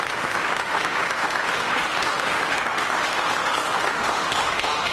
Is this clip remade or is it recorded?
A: remade